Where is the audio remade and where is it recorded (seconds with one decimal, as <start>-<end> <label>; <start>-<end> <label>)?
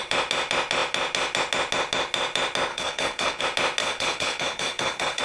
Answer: 0.0-2.7 recorded; 2.7-3.4 remade; 3.4-3.8 recorded; 3.8-5.2 remade